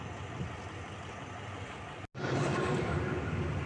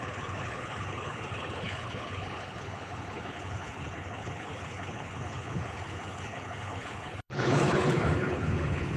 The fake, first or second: second